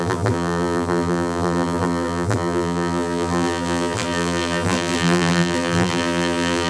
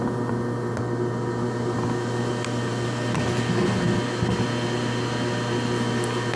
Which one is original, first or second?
second